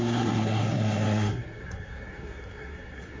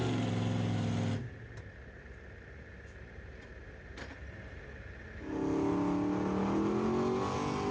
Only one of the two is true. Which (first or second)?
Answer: second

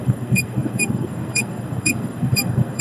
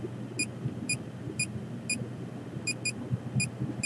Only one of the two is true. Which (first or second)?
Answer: second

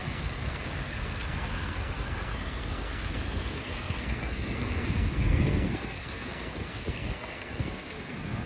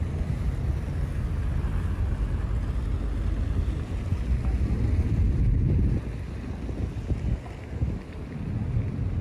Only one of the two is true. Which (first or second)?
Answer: second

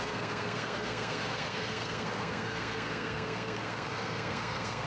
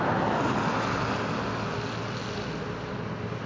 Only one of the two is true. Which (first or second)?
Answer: second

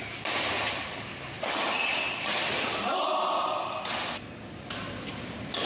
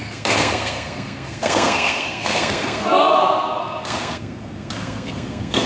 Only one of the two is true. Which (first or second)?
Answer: first